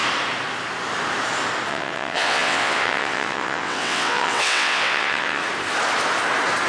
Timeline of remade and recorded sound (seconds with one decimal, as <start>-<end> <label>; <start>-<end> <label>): 0.0-1.7 recorded; 1.7-5.4 remade; 5.4-6.7 recorded